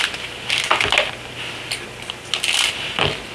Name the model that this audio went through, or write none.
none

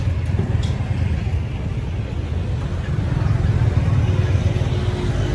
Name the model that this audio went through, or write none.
none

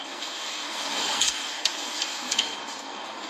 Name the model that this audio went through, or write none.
codec, SNAC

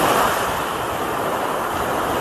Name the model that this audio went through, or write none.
none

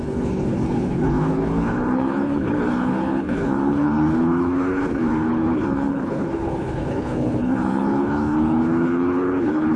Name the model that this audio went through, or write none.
codec, HILCodec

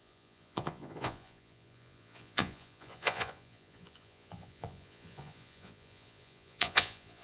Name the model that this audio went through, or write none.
vocoder, Vocos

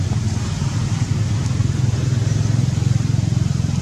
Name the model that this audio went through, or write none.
none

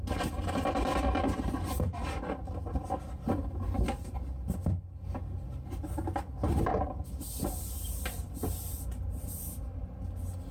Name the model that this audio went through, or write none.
none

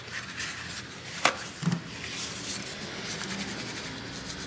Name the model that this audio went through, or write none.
none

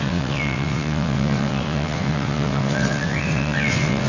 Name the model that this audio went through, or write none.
vocoder, WaveNeXt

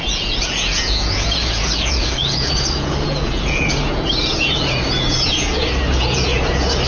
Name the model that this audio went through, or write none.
vocoder, Vocos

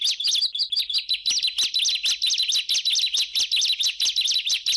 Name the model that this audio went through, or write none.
none